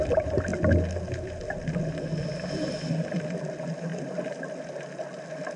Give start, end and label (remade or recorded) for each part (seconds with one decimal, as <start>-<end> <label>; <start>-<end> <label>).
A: 0.0-0.5 remade; 0.5-2.5 recorded; 2.5-3.9 remade; 3.9-5.6 recorded